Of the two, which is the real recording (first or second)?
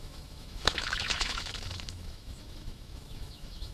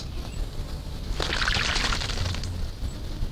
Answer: second